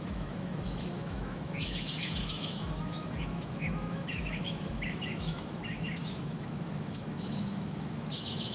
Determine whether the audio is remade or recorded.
remade